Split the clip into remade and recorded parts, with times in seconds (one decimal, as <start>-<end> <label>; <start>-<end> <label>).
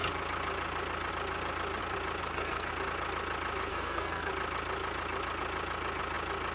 0.0-2.2 recorded; 2.2-2.7 remade; 2.7-3.7 recorded; 3.7-4.3 remade; 4.3-6.5 recorded